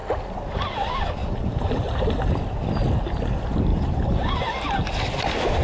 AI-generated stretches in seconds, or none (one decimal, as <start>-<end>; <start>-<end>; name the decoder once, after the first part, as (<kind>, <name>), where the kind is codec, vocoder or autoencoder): 1.2-2.4 (vocoder, BigVGAN v2); 3.7-4.9

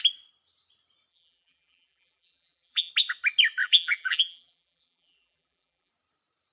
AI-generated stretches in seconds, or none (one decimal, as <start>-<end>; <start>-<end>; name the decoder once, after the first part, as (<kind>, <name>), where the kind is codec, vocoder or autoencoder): 1.1-2.9 (vocoder, BigVGAN v2); 3.6-5.9

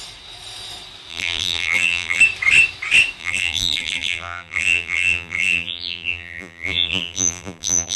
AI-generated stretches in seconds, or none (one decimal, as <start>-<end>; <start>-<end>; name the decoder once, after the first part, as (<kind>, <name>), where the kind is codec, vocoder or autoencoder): 1.1-2.2 (vocoder, BigVGAN v2); 3.2-8.0

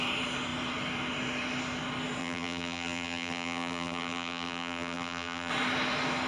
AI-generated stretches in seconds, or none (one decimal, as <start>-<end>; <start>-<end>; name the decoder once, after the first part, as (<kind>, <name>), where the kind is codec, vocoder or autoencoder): 2.2-5.5 (vocoder, BigVGAN v2)